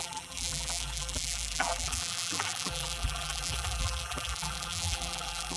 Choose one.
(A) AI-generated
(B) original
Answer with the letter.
A